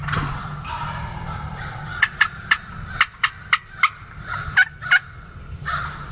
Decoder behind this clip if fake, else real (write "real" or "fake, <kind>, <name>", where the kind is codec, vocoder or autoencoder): fake, vocoder, BigVGAN v2